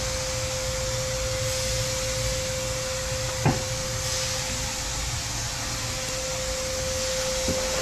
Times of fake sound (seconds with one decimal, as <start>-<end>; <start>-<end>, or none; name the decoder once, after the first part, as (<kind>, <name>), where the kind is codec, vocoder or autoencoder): none